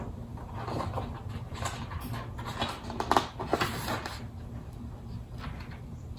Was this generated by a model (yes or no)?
no